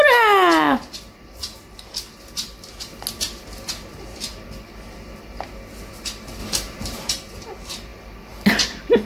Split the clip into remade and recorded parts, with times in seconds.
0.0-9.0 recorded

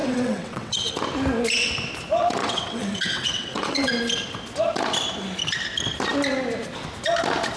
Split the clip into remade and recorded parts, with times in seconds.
0.0-1.0 remade; 1.0-2.4 recorded; 2.4-3.9 remade; 3.9-7.6 recorded